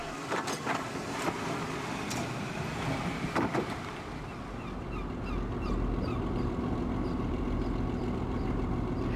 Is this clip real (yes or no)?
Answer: yes